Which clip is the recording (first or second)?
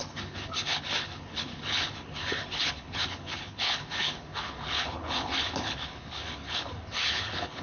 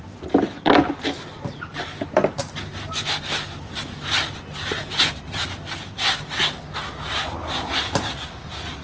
second